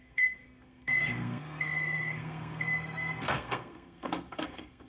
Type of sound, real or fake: fake